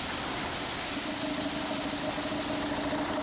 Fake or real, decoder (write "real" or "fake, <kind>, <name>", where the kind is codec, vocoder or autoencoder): real